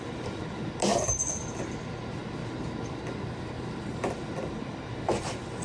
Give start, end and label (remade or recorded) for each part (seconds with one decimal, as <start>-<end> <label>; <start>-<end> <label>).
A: 0.0-5.6 recorded